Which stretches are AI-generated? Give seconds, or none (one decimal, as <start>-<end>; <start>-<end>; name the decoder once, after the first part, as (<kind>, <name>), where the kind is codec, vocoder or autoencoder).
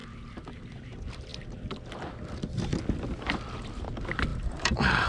4.3-5.1 (vocoder, BigVGAN v2)